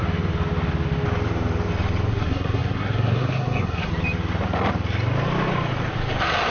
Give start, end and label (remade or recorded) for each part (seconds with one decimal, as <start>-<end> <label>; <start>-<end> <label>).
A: 0.0-2.1 recorded; 2.1-3.9 remade; 3.9-6.5 recorded